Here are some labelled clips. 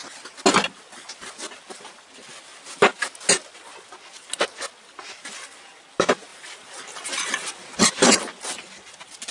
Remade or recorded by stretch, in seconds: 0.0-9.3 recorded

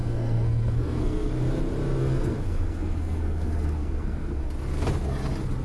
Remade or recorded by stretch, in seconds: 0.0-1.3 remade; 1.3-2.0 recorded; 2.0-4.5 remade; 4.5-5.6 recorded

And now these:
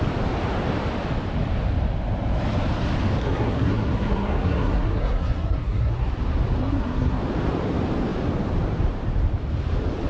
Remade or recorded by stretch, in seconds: 0.0-3.2 recorded; 3.2-6.1 remade; 6.1-6.6 recorded; 6.6-7.2 remade; 7.2-10.1 recorded

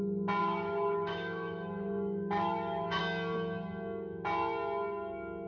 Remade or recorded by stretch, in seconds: 0.0-0.4 recorded; 0.4-3.0 remade; 3.0-5.5 recorded